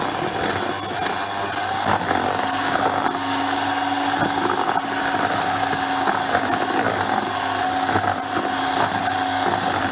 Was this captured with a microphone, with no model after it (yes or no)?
yes